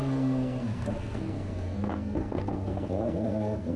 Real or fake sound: fake